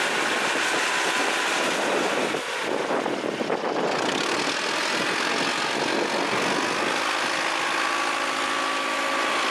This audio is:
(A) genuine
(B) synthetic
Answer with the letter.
A